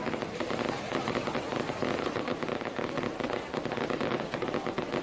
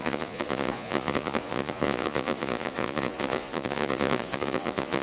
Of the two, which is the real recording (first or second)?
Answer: first